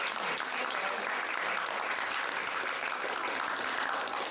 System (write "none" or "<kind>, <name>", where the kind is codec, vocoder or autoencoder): none